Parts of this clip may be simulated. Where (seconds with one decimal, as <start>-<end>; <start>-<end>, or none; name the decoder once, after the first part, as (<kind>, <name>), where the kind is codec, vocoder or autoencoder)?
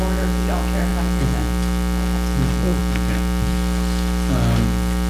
none